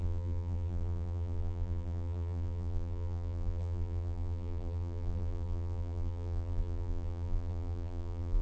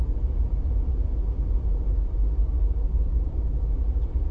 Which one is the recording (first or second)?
second